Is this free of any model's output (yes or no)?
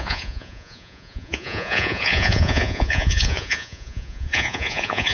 no